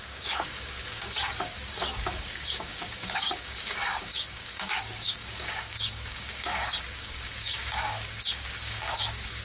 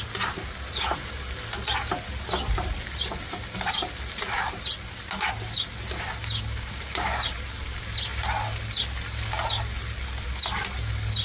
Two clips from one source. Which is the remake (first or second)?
first